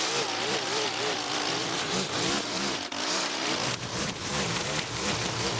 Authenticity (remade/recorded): remade